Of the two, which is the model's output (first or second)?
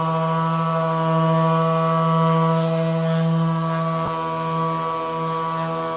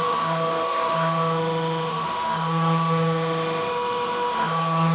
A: second